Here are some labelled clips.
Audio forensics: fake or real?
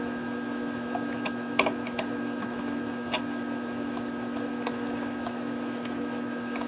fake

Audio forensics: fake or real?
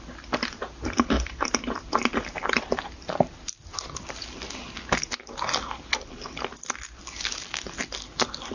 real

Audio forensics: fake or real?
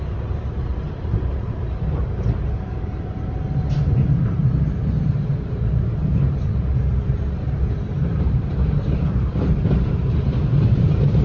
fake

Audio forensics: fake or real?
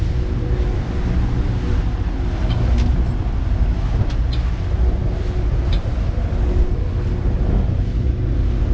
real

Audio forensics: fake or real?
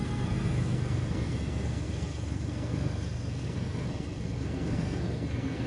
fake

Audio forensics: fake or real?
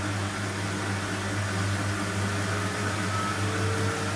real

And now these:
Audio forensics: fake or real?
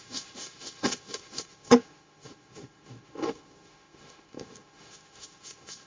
fake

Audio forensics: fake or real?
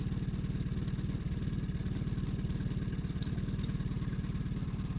real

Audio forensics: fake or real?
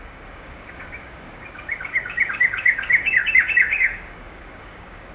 fake